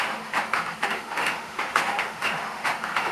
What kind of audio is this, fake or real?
fake